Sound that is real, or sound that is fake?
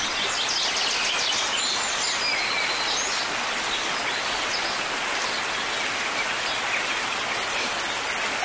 real